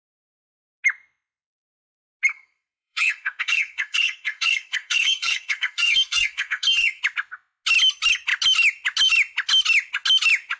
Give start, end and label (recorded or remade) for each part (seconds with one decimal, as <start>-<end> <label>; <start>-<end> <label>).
0.0-2.3 recorded; 2.3-7.0 remade; 7.0-10.6 recorded